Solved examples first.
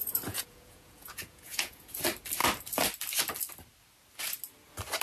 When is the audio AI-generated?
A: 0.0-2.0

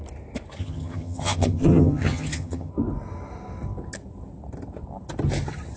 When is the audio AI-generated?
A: 0.6-2.7

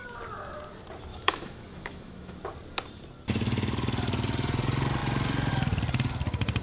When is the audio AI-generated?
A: 1.1-2.4

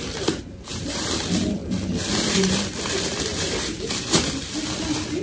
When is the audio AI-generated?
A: 0.7-1.2; 3.3-4.3

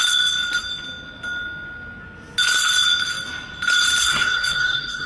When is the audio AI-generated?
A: 4.0-5.1

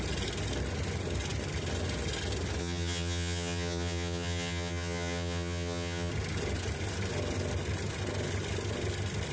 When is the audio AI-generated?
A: 2.6-6.1

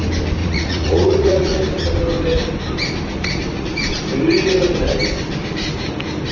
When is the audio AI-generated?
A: 0.4-1.6; 3.1-3.9

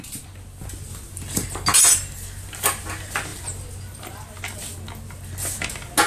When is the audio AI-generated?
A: none